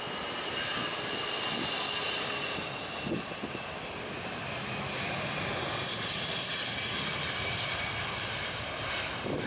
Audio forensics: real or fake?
real